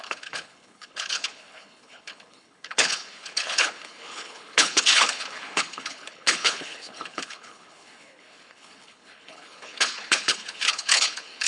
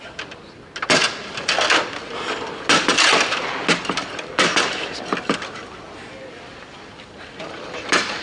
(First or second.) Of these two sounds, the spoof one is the first